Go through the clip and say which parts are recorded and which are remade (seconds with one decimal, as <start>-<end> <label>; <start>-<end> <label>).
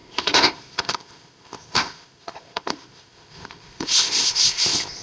0.0-5.0 remade